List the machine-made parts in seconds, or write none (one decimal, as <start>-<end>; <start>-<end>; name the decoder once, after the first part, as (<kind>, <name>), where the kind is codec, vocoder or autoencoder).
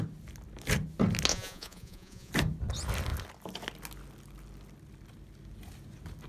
1.3-2.3 (vocoder, Vocos)